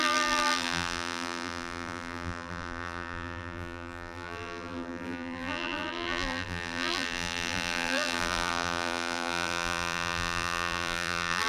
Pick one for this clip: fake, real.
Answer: fake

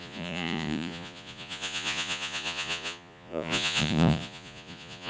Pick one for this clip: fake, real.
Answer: fake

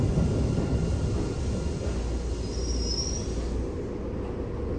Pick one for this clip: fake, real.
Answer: real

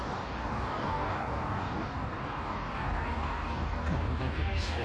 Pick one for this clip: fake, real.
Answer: fake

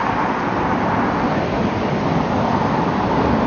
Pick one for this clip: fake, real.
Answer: fake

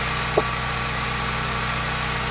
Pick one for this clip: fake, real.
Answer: real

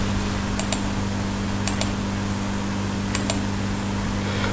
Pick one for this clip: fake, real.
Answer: real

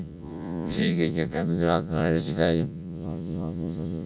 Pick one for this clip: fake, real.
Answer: fake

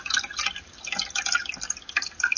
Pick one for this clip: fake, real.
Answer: real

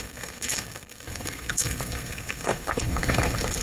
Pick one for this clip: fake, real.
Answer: fake